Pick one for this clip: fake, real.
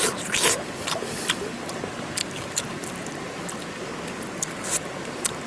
real